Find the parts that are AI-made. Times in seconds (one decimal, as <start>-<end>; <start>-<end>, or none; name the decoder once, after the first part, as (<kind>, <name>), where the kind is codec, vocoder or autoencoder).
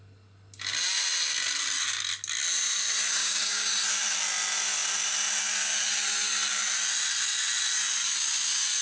3.2-3.7 (codec, DAC)